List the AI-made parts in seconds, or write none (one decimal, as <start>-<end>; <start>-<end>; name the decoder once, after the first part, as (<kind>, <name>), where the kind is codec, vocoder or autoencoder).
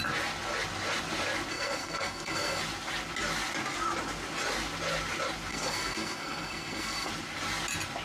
1.5-2.6 (codec, SNAC); 5.5-7.1